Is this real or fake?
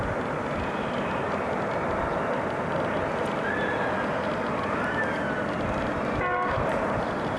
real